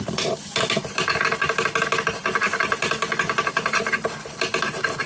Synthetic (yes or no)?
no